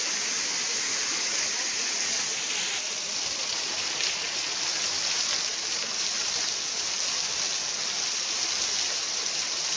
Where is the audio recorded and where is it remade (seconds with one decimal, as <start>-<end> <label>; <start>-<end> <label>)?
0.0-2.3 recorded; 2.3-4.2 remade; 4.2-9.8 recorded